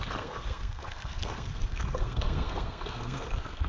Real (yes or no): no